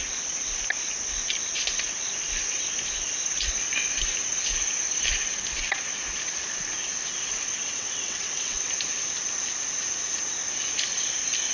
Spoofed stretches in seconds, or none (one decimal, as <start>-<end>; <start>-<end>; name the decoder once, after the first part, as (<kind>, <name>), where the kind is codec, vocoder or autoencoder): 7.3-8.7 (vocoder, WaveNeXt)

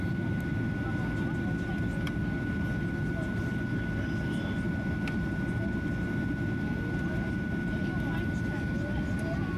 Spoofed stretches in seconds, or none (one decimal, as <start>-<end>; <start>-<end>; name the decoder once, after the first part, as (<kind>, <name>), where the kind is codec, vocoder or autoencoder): none

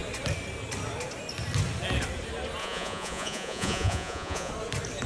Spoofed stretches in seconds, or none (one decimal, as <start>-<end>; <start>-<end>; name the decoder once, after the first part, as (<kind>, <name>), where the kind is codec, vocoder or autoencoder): 2.6-4.5 (vocoder, Vocos)

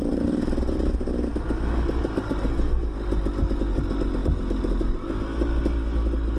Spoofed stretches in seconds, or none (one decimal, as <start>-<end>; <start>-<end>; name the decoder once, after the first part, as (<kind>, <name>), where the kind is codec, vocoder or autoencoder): none

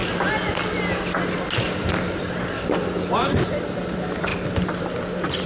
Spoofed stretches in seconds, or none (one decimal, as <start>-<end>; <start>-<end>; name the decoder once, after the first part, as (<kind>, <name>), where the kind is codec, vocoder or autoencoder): none

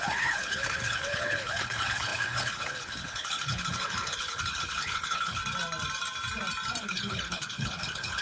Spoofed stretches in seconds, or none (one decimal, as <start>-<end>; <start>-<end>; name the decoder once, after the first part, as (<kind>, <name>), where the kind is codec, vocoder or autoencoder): 0.0-5.4 (codec, HILCodec); 6.8-8.2